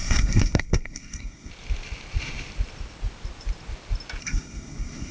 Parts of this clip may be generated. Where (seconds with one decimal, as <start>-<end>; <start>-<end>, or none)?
0.0-1.5; 4.2-5.1